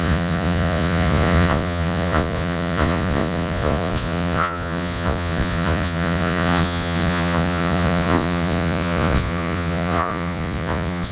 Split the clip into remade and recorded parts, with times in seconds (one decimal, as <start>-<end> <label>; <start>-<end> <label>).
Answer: 0.0-11.1 remade